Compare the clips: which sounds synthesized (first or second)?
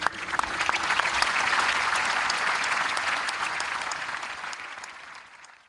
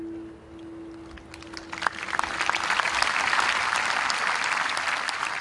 first